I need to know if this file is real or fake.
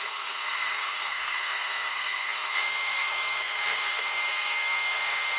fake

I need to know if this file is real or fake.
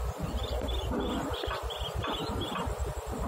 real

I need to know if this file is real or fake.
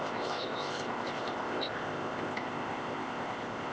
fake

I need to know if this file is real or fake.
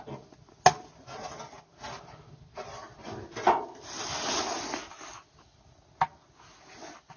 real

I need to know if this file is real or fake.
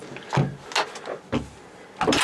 real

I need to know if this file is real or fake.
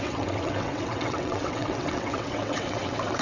fake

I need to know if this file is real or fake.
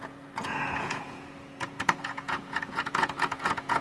fake